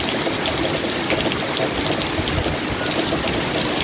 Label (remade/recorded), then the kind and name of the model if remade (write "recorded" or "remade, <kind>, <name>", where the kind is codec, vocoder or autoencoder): recorded